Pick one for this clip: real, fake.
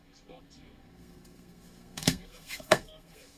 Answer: fake